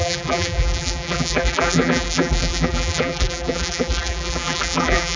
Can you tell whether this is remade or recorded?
remade